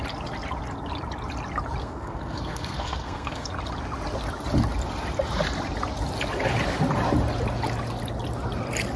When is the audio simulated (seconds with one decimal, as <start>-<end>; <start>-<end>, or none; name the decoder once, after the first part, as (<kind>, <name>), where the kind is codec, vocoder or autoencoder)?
1.8-3.5 (codec, SNAC)